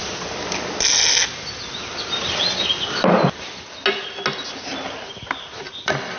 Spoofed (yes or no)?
no